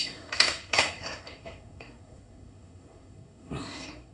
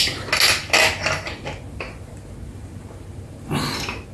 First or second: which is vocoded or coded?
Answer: first